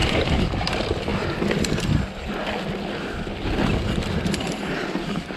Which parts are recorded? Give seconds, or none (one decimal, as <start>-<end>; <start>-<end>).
0.7-5.4